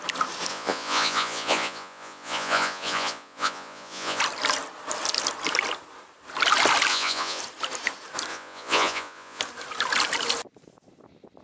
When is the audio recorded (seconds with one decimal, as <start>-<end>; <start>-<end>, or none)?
0.0-0.5; 4.2-6.9; 7.4-8.3; 9.4-11.4